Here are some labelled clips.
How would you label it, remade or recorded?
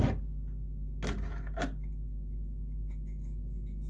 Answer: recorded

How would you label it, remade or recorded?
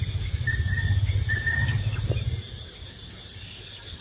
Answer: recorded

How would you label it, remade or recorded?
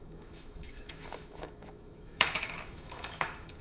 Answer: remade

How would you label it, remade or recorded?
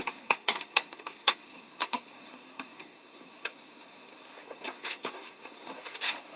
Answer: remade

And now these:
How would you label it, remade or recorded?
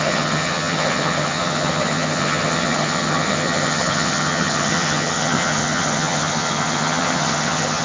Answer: remade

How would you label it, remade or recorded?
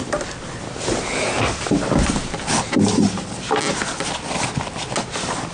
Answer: recorded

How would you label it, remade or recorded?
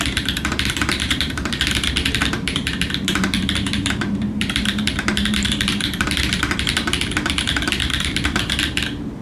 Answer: remade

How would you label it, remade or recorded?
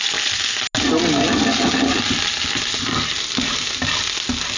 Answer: recorded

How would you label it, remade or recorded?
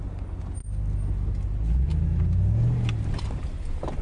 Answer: recorded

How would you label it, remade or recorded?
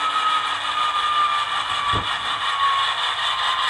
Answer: recorded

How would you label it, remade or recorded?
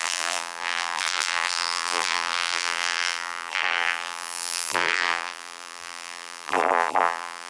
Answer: remade